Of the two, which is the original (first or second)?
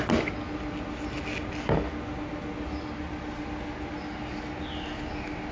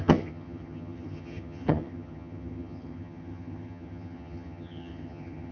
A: first